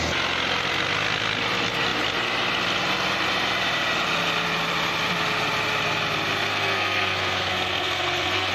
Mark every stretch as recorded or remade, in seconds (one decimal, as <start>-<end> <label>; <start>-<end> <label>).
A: 0.0-6.5 recorded; 6.5-8.5 remade